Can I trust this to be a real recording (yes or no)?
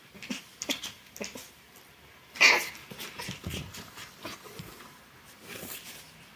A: yes